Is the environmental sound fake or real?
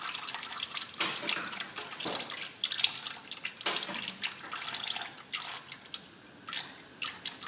real